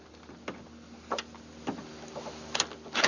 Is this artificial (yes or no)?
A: no